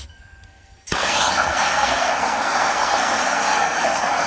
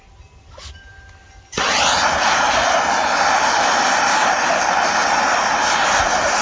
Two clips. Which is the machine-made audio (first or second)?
first